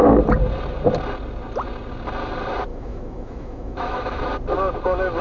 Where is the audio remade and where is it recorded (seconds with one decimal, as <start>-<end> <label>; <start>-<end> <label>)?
0.0-2.7 recorded; 2.7-4.2 remade; 4.2-5.2 recorded